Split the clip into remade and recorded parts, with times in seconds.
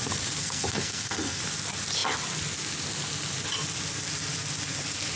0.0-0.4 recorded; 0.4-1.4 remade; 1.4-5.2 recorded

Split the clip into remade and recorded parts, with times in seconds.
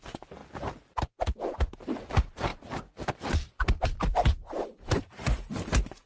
0.0-0.4 remade; 0.4-1.4 recorded; 1.4-6.1 remade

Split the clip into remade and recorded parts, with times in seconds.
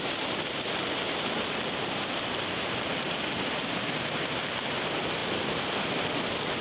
0.0-6.6 recorded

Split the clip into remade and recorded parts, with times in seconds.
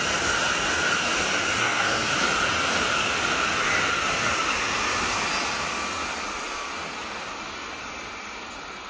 0.0-1.6 recorded; 1.6-2.1 remade; 2.1-8.9 recorded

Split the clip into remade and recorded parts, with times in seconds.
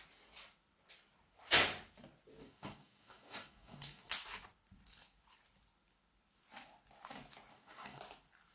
0.0-2.4 recorded; 2.4-4.1 remade; 4.1-7.5 recorded; 7.5-8.0 remade; 8.0-8.5 recorded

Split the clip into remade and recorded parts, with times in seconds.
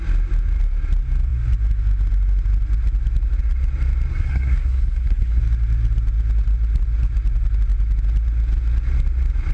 0.0-4.1 recorded; 4.1-5.4 remade; 5.4-9.5 recorded